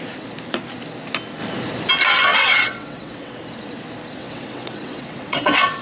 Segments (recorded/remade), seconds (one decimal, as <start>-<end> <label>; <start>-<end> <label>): 0.0-2.3 recorded; 2.3-3.4 remade; 3.4-4.2 recorded; 4.2-5.8 remade